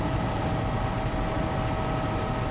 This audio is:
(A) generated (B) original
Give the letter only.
B